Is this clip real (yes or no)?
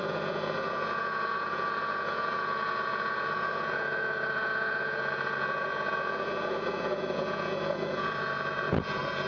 no